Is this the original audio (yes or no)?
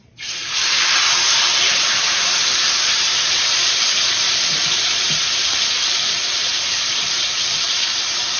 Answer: no